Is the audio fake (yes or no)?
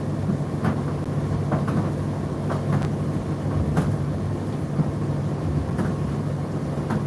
no